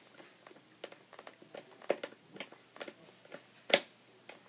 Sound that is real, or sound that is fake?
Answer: real